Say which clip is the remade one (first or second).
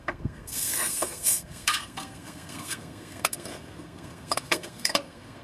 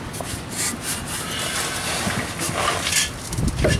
first